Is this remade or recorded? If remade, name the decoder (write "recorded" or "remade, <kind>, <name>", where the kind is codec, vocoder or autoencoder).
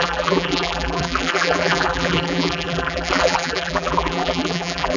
remade, vocoder, BigVGAN v2